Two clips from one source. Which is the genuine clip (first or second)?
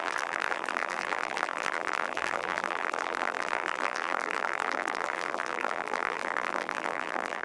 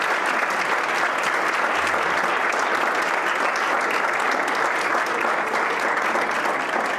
second